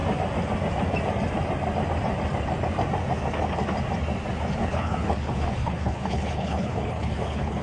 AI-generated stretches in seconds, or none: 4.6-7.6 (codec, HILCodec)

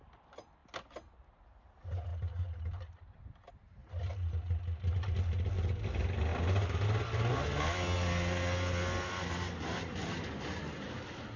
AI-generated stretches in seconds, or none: none

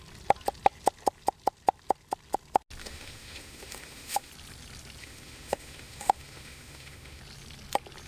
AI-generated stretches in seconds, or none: 2.8-4.3 (autoencoder, DAC-VAE); 5.0-7.2

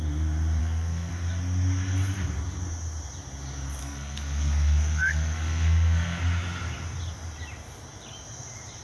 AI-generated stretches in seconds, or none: 0.6-1.1 (codec, SNAC); 3.8-6.2